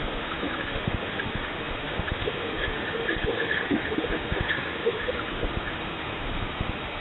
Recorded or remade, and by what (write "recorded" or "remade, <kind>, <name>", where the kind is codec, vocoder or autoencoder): remade, autoencoder, DAC-VAE